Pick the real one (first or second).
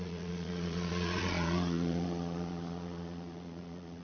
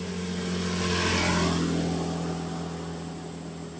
second